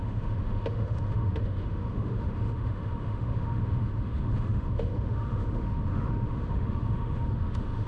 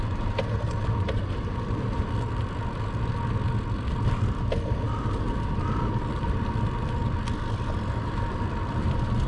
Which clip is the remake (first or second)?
first